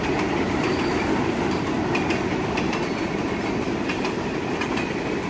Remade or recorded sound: recorded